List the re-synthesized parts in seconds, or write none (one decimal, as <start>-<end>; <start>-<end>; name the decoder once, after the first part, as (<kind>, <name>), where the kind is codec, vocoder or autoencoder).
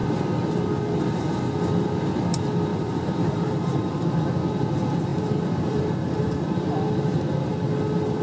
2.7-4.0 (vocoder, BigVGAN v2); 5.1-6.7